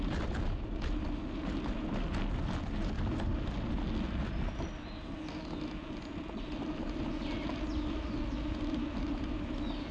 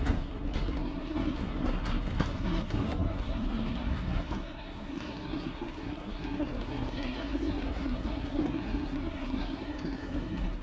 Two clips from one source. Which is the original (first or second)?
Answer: first